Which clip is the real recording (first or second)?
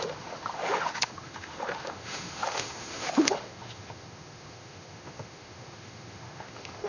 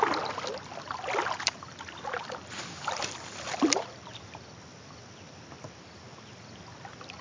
second